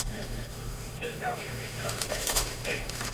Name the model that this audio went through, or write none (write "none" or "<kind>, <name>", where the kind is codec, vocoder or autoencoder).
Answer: autoencoder, DAC-VAE